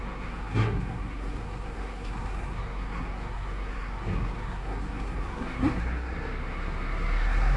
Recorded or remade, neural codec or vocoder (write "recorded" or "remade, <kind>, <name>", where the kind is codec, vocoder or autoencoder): remade, codec, SNAC